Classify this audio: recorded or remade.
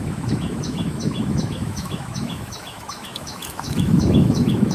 remade